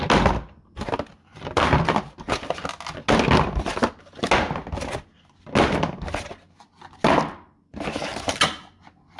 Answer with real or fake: real